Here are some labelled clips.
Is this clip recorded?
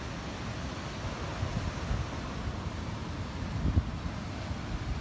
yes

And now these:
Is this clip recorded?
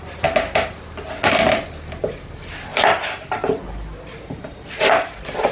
yes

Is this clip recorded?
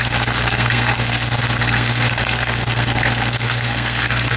no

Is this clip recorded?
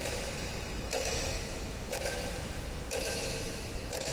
no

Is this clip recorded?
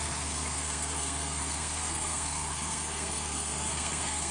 no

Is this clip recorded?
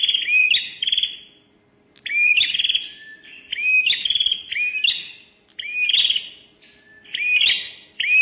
yes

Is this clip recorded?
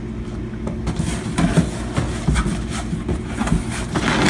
yes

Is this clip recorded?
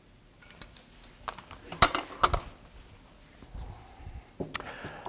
yes